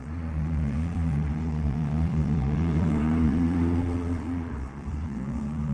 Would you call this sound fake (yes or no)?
yes